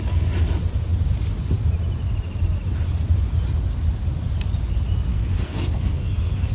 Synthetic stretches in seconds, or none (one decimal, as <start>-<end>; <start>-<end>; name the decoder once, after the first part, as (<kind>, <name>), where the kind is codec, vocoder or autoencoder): 5.1-6.5 (codec, SNAC)